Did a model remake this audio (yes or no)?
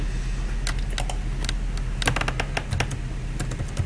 no